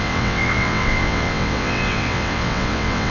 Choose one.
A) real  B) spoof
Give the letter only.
B